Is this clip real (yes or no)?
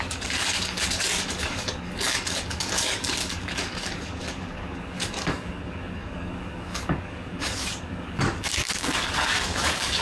no